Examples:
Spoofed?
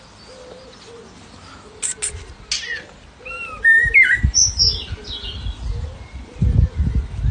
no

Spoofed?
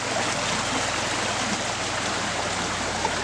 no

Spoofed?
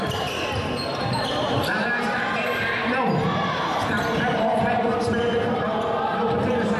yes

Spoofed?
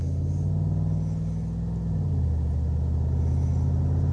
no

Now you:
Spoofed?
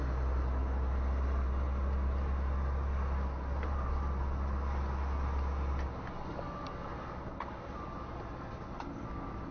no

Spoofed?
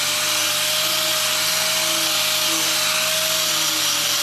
no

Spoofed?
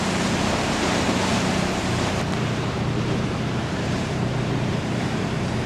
yes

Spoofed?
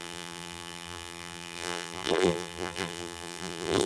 yes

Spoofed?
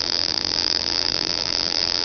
yes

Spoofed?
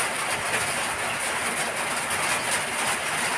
no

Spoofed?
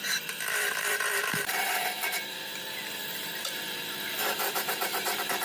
yes